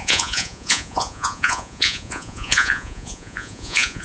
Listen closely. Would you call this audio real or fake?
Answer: fake